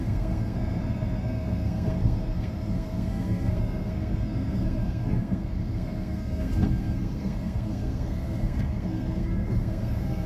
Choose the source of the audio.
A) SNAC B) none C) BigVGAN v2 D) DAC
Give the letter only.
A